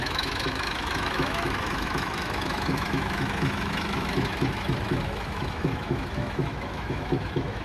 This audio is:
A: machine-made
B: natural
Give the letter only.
A